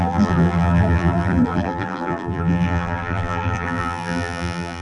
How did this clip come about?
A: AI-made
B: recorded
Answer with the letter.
A